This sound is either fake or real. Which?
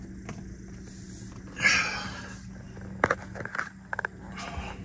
real